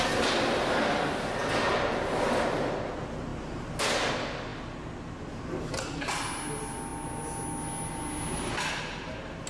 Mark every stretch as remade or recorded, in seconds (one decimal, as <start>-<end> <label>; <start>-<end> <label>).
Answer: 0.0-9.5 recorded